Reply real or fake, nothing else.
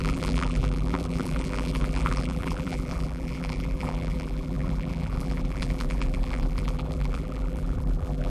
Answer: fake